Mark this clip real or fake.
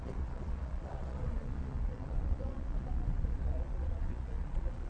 fake